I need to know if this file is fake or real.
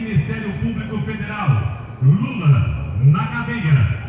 real